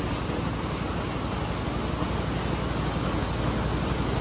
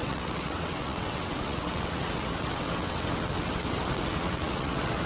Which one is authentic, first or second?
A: first